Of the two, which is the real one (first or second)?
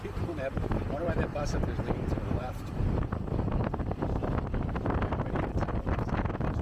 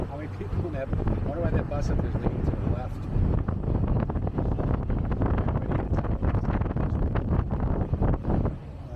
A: second